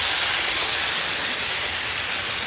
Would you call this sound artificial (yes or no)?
no